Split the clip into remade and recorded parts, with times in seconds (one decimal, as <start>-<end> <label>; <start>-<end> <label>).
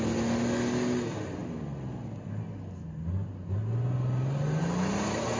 0.0-5.4 recorded